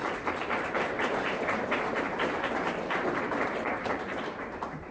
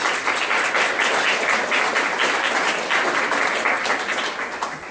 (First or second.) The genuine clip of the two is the second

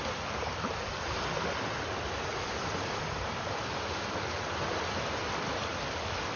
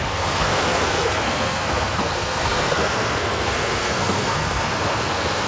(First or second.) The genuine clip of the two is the first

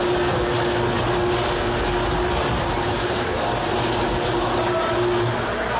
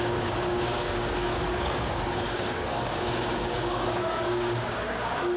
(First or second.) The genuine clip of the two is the first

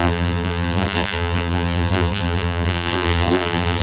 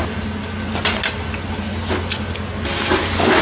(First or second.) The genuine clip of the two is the second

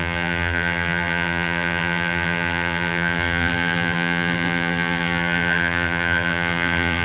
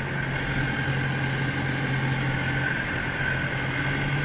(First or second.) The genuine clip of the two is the second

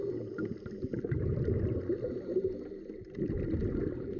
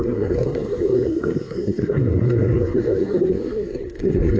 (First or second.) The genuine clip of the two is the first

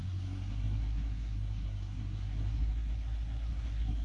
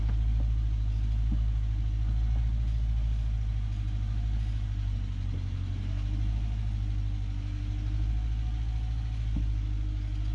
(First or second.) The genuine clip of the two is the second